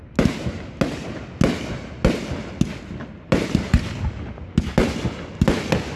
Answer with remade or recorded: recorded